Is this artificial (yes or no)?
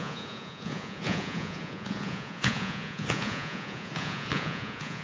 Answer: yes